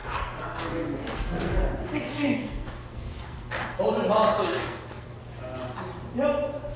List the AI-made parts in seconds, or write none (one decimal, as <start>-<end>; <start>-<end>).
0.0-3.8; 4.4-5.2